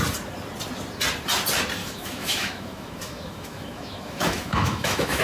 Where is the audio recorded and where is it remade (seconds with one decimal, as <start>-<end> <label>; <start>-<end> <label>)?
0.0-1.8 recorded; 1.8-5.2 remade